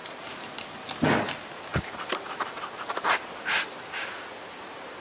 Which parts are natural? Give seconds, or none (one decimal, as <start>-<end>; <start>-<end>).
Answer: 0.5-1.7